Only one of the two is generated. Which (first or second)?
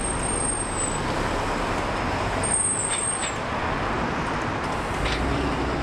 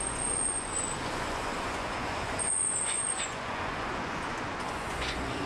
second